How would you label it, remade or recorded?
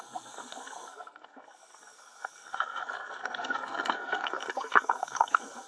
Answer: remade